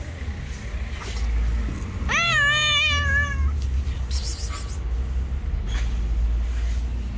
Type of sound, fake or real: real